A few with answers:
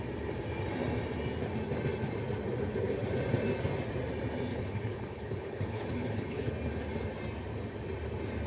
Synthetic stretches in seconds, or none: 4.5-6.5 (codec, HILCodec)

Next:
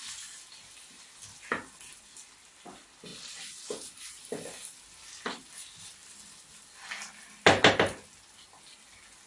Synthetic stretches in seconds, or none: none

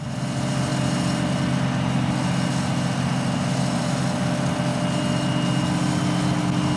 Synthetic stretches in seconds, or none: none

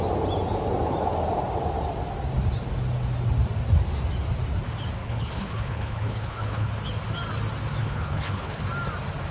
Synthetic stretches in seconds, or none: 5.0-6.7 (codec, HILCodec); 7.8-8.6

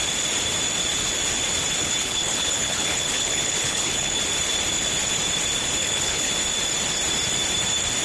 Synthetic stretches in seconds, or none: 1.8-4.2 (codec, HILCodec); 5.8-6.3

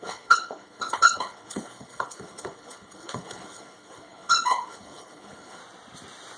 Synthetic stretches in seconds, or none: 0.0-5.6 (codec, HILCodec)